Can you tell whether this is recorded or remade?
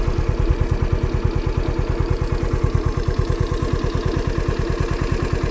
recorded